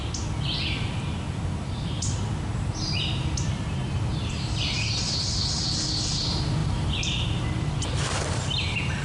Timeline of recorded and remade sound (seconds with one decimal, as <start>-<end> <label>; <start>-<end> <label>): 0.0-3.0 recorded; 3.0-3.8 remade; 3.8-4.9 recorded; 4.9-9.0 remade